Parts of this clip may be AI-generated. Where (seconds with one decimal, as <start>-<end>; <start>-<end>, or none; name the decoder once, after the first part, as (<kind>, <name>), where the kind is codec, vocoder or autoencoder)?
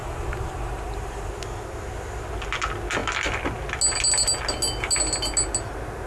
0.0-1.3 (vocoder, BigVGAN v2)